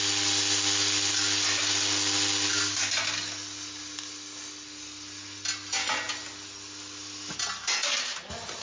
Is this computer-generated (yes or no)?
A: no